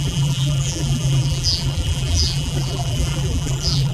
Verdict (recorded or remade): remade